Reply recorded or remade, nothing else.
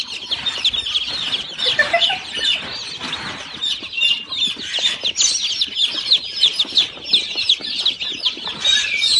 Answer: recorded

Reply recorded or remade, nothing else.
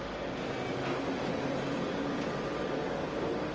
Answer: recorded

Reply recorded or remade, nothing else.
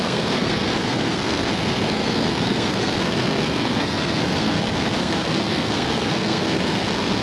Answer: remade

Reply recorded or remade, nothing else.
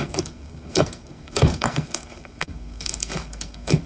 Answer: remade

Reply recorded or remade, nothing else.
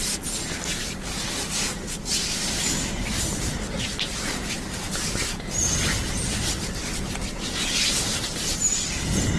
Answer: remade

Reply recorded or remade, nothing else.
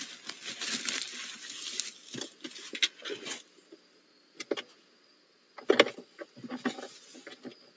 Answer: recorded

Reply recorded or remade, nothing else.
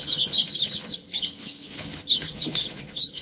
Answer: remade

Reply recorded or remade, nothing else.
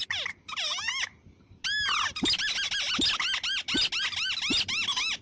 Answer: recorded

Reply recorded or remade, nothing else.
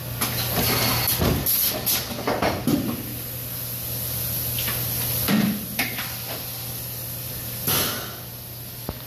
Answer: recorded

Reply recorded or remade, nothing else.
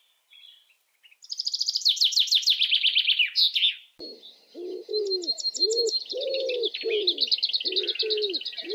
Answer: recorded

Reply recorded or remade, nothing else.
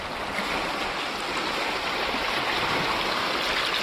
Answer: recorded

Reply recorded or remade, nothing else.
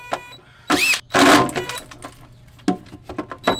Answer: recorded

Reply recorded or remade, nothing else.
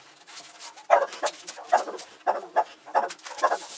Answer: recorded